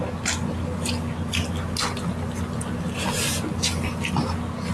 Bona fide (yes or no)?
yes